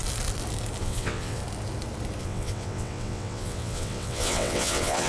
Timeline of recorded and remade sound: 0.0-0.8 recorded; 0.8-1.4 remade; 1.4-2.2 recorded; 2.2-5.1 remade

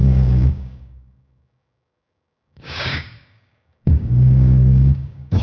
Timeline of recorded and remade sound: 0.0-5.4 remade

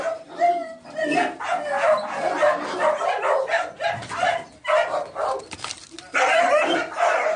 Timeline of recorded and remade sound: 0.0-7.4 recorded

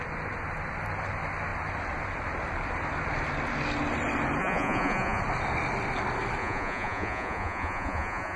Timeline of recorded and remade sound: 0.0-4.4 recorded; 4.4-5.2 remade; 5.2-6.4 recorded; 6.4-8.4 remade

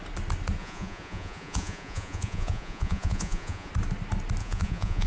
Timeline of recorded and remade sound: 0.0-0.6 recorded; 0.6-3.7 remade; 3.7-4.4 recorded; 4.4-5.1 remade

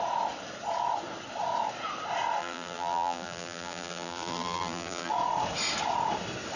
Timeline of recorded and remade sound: 0.0-2.4 recorded; 2.4-5.1 remade; 5.1-6.6 recorded

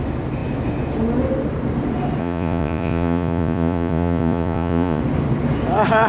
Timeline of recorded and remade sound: 0.0-2.2 recorded; 2.2-5.0 remade; 5.0-6.1 recorded